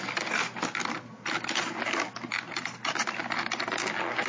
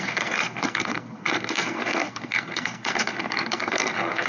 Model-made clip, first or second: second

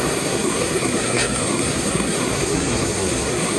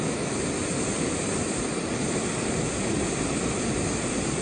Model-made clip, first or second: first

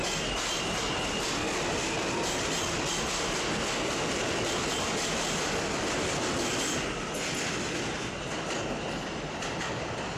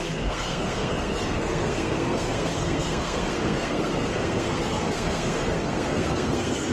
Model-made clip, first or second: second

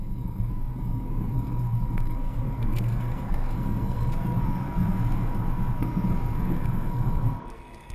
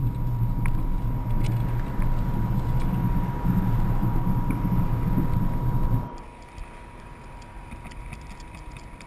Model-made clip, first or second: first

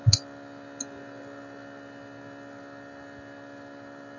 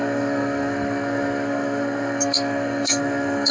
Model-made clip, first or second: second